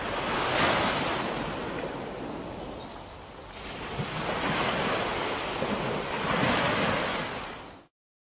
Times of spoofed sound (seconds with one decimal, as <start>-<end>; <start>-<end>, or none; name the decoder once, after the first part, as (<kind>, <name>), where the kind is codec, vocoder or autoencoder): none